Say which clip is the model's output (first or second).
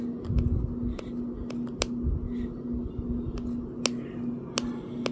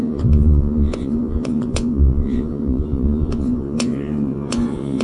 second